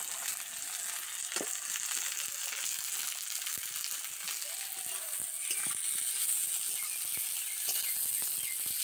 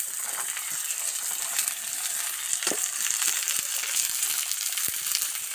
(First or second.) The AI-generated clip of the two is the second